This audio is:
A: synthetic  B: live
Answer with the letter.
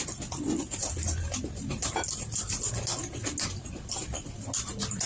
B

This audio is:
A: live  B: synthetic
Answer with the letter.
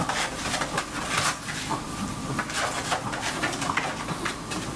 A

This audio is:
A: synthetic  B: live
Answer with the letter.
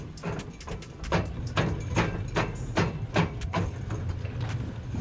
B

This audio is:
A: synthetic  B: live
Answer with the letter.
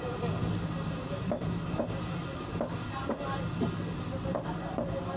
B